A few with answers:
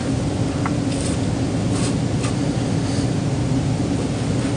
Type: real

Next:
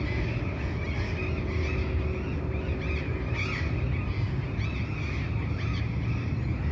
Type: real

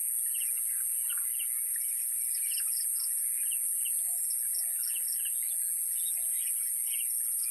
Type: real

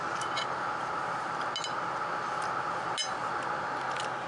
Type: real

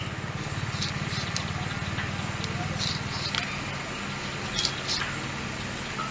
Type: real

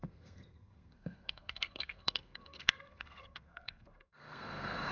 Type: fake